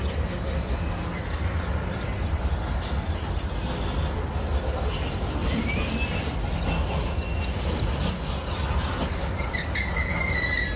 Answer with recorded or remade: recorded